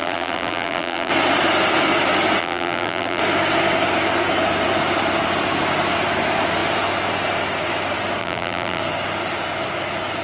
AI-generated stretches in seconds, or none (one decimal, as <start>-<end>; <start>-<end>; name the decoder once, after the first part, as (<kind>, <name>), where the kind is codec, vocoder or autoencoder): 0.0-1.1 (vocoder, BigVGAN v2); 2.4-3.2; 8.2-8.8